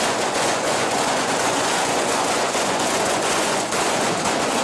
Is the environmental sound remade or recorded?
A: remade